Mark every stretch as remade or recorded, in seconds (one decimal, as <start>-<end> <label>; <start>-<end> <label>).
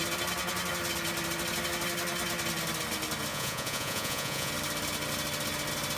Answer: 0.0-3.3 recorded; 3.3-4.5 remade; 4.5-6.0 recorded